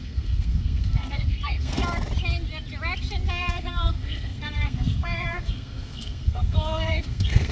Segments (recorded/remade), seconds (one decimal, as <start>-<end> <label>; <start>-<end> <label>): 0.0-1.8 remade; 1.8-3.3 recorded; 3.3-7.5 remade